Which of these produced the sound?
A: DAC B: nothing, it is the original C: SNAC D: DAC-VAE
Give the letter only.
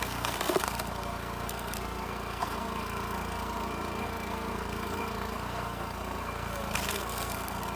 C